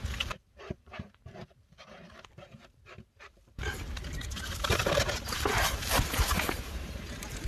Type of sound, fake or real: fake